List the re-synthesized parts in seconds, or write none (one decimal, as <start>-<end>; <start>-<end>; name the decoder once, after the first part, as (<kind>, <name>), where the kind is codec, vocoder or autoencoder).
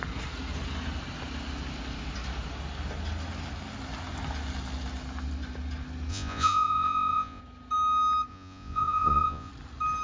6.1-7.4 (vocoder, Vocos); 8.3-9.5